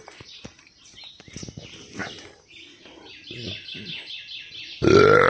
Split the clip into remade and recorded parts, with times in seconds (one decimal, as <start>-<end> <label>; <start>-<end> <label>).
0.0-5.3 recorded